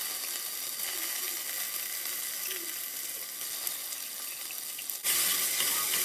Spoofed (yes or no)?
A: no